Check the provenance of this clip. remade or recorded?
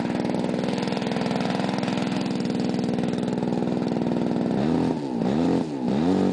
recorded